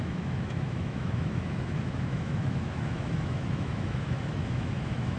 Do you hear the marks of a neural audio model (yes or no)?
yes